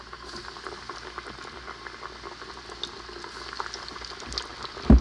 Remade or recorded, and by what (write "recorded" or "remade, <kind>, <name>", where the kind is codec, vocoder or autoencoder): recorded